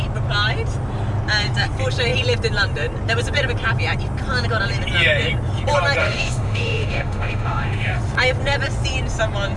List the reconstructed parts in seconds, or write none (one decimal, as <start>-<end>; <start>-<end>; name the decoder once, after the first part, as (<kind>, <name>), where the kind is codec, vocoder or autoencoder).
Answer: 6.0-8.0 (autoencoder, DAC-VAE)

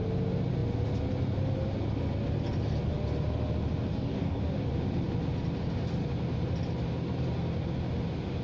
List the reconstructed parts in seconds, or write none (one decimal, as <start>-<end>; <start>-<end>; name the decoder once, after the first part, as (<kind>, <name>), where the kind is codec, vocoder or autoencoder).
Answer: 3.9-4.4 (codec, DAC)